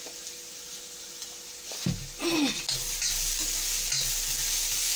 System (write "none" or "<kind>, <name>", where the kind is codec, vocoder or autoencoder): none